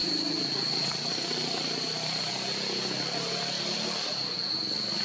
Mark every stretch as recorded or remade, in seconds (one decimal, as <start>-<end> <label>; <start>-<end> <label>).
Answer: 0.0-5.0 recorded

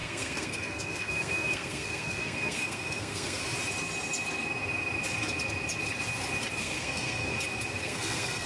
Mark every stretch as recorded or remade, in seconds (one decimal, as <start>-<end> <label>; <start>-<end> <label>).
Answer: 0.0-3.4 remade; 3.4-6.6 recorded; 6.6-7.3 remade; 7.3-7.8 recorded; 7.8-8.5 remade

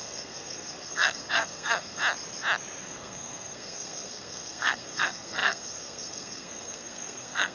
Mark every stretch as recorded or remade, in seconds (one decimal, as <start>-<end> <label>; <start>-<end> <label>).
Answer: 0.0-2.0 remade; 2.0-2.8 recorded; 2.8-7.5 remade

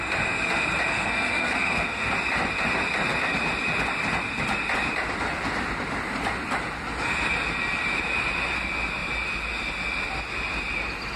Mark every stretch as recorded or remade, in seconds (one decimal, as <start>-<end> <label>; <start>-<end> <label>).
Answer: 0.0-0.9 recorded; 0.9-2.1 remade; 2.1-11.2 recorded

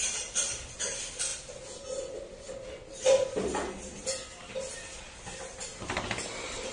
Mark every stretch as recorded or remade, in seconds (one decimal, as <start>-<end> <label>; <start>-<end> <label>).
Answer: 0.0-6.7 recorded